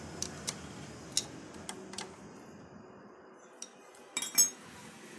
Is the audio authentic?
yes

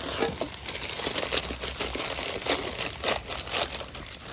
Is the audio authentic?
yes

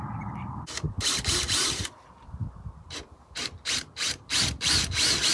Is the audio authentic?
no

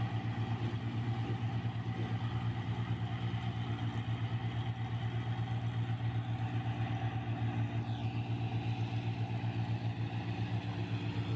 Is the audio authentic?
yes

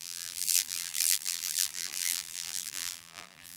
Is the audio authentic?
no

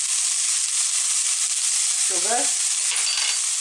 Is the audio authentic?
yes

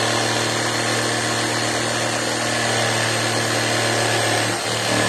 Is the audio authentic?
yes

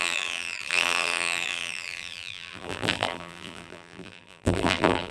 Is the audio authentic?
no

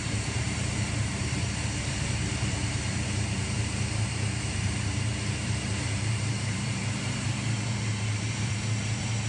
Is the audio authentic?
no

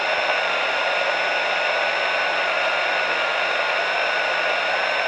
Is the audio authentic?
yes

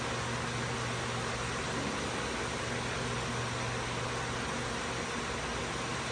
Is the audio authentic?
yes